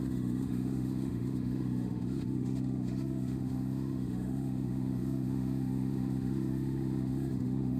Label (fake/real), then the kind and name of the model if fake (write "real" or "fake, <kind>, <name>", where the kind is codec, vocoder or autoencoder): fake, autoencoder, DAC-VAE